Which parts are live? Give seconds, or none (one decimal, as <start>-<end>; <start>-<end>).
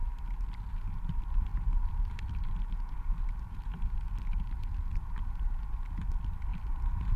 0.0-7.2